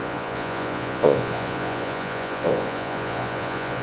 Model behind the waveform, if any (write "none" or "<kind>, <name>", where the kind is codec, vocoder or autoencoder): vocoder, Vocos